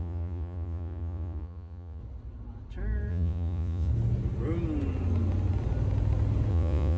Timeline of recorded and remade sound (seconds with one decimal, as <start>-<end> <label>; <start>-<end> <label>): 0.0-2.0 remade; 2.0-3.1 recorded; 3.1-3.9 remade; 3.9-6.5 recorded; 6.5-7.0 remade